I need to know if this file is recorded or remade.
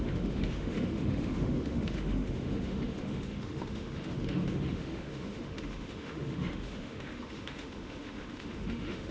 remade